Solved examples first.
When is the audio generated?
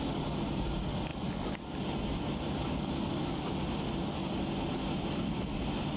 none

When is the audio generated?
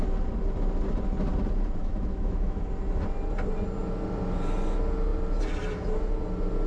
1.8-2.7 (autoencoder, DAC-VAE)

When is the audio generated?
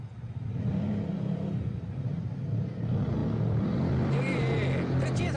none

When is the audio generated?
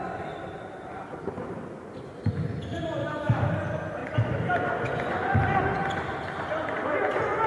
3.0-3.5 (autoencoder, DAC-VAE)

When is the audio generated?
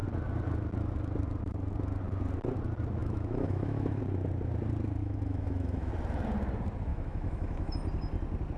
3.0-4.0 (autoencoder, DAC-VAE); 5.0-5.9; 6.9-7.7